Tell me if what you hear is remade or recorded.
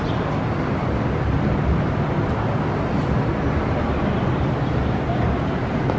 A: recorded